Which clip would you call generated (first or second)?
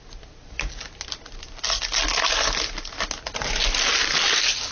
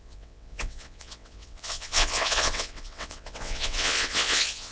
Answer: second